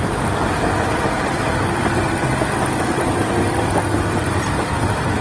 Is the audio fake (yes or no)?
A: yes